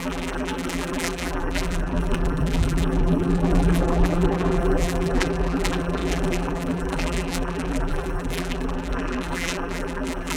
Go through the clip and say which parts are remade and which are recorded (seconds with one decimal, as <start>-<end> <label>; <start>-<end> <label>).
0.0-10.4 remade